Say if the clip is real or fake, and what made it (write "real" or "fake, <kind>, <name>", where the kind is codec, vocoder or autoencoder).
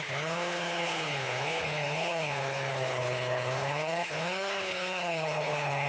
fake, codec, HILCodec